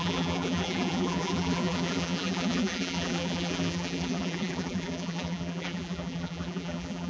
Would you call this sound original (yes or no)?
no